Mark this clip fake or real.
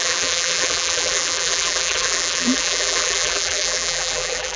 fake